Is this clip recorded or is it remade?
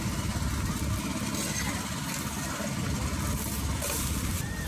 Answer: recorded